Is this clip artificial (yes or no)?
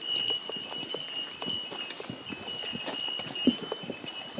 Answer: no